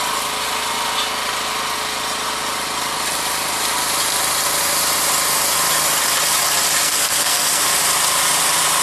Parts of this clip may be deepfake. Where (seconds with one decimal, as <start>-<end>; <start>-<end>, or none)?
6.8-7.6